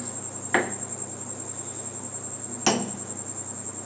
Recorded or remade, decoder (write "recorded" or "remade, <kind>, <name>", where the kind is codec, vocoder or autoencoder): recorded